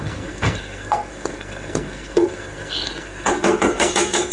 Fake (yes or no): yes